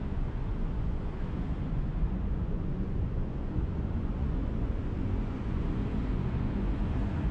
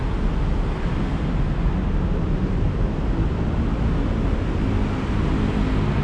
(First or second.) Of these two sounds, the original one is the second